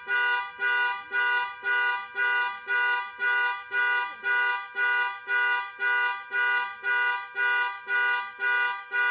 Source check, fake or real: real